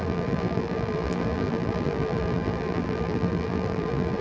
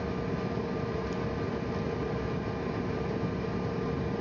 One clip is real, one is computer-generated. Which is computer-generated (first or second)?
first